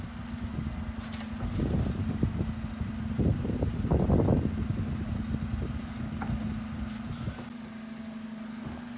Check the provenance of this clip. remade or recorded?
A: recorded